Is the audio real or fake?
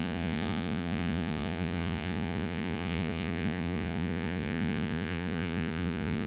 fake